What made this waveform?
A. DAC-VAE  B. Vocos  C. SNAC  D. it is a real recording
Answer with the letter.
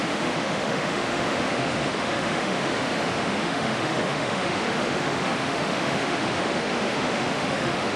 A